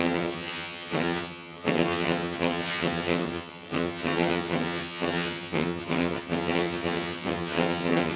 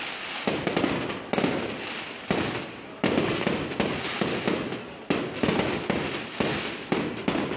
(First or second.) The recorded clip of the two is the second